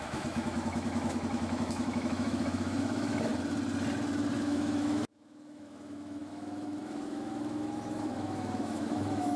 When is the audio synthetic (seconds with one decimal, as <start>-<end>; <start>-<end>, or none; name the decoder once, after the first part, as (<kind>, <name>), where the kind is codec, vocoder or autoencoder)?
0.0-3.3 (autoencoder, DAC-VAE); 4.4-9.4